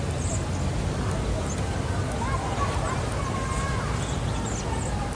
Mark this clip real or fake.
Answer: real